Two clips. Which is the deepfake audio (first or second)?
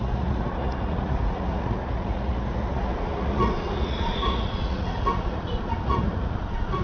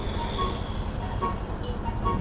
first